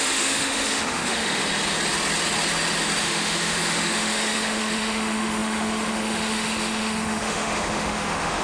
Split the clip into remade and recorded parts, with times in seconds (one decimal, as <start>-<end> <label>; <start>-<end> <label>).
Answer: 0.0-1.4 remade; 1.4-3.0 recorded; 3.0-8.4 remade